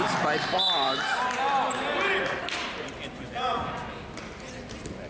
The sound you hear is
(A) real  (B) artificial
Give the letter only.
A